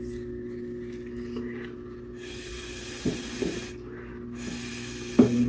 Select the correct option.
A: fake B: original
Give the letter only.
B